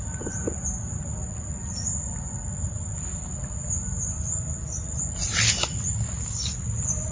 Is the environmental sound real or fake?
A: real